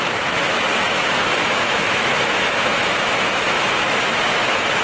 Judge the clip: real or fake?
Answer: fake